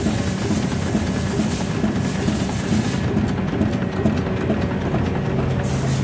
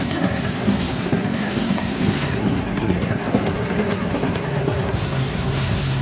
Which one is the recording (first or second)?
first